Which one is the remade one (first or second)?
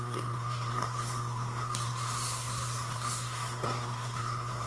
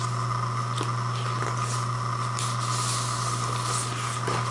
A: first